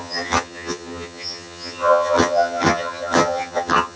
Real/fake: fake